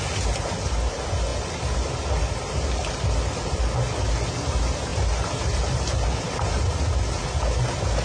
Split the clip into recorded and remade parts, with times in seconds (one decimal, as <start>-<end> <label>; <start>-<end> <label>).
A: 0.0-8.0 recorded